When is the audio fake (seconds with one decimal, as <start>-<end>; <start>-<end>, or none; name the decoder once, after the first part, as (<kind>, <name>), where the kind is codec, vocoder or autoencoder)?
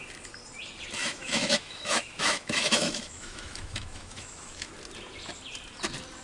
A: 1.0-4.7 (autoencoder, DAC-VAE)